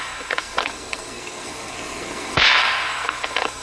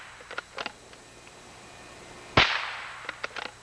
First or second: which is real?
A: second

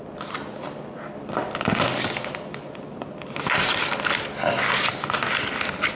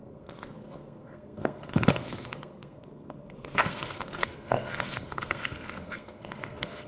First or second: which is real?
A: first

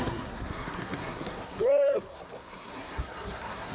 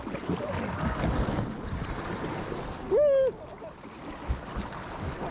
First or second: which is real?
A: second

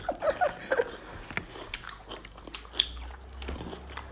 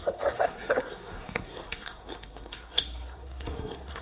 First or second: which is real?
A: first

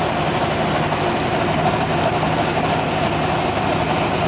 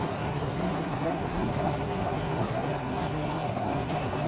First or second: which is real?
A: first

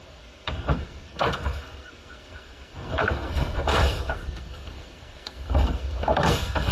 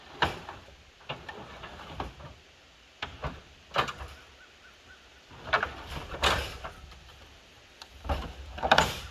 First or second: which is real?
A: second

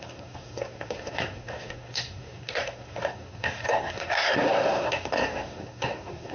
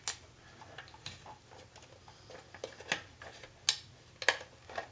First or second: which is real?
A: second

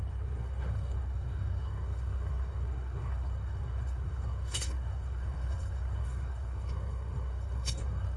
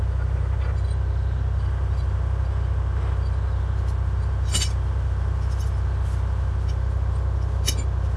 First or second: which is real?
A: second